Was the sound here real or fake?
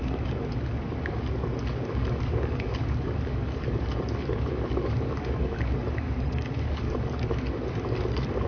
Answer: fake